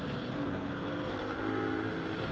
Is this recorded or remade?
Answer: remade